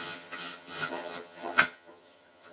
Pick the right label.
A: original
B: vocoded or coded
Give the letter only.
B